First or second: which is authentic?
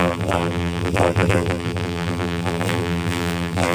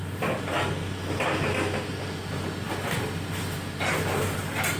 second